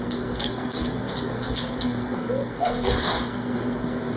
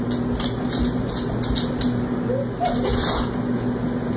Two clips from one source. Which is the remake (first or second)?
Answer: first